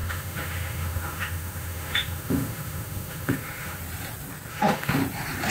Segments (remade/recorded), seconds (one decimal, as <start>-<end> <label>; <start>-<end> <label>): 0.0-3.8 remade; 3.8-4.5 recorded; 4.5-5.0 remade; 5.0-5.5 recorded